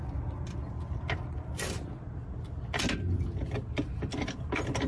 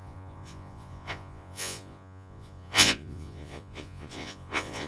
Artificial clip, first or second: second